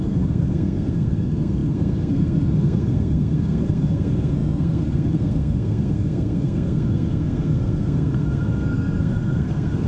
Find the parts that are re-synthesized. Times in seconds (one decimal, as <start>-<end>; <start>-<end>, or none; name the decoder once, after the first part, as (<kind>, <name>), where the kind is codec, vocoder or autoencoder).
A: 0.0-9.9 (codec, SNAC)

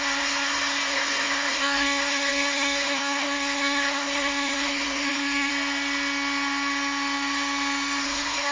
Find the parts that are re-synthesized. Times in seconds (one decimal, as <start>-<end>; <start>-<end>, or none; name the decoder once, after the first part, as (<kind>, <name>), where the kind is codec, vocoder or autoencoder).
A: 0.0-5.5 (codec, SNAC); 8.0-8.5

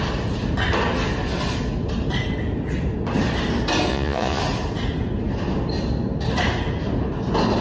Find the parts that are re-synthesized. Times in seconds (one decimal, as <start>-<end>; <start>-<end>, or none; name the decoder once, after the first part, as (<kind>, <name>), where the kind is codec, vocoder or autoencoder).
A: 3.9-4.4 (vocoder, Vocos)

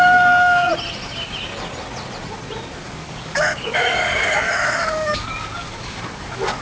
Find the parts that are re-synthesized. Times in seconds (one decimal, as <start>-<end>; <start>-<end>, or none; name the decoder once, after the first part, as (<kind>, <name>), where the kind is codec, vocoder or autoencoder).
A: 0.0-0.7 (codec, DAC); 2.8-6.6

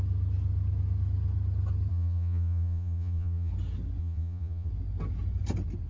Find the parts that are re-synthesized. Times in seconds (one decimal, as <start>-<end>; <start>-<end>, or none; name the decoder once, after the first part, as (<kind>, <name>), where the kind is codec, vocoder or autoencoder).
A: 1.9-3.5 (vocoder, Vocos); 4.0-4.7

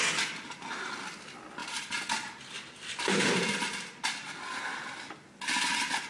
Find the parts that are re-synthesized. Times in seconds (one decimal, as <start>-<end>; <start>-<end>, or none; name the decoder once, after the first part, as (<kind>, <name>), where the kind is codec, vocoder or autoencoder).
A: none

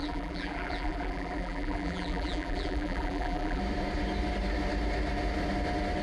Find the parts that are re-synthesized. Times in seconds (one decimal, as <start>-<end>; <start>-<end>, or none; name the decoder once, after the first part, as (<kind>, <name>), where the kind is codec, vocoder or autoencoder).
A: 0.0-3.6 (vocoder, BigVGAN v2)

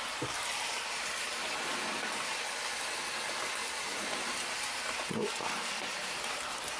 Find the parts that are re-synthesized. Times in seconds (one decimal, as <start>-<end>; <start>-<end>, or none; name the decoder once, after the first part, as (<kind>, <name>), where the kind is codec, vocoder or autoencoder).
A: 3.6-5.3 (vocoder, BigVGAN v2); 6.0-6.8